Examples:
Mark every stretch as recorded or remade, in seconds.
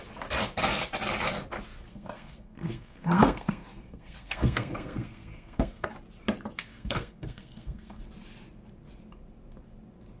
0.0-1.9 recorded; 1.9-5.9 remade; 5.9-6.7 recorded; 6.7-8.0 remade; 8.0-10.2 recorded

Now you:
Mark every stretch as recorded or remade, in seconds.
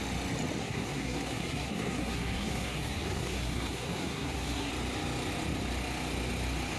0.0-0.6 recorded; 0.6-4.7 remade; 4.7-6.8 recorded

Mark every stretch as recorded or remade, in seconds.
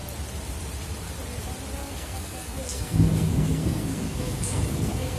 0.0-1.8 recorded; 1.8-5.2 remade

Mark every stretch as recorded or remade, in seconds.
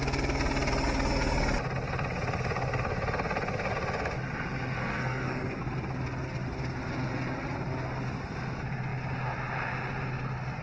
0.0-4.8 recorded; 4.8-5.6 remade; 5.6-10.6 recorded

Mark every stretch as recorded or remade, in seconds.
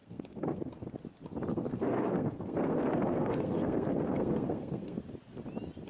0.0-0.7 remade; 0.7-1.5 recorded; 1.5-5.0 remade; 5.0-5.9 recorded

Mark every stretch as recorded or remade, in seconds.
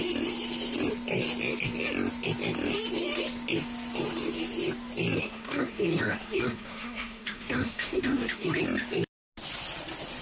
0.0-5.2 recorded; 5.2-8.6 remade; 8.6-10.2 recorded